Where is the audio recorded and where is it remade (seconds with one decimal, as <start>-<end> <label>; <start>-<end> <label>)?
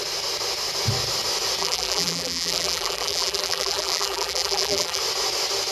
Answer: 0.0-1.6 recorded; 1.6-5.0 remade; 5.0-5.7 recorded